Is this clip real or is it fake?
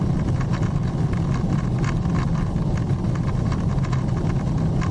fake